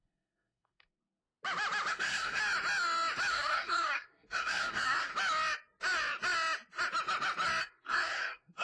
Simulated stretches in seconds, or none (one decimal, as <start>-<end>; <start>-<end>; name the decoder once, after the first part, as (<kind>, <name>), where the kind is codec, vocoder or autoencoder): 0.0-1.2 (codec, SNAC); 1.9-2.4; 3.3-5.1; 7.6-8.6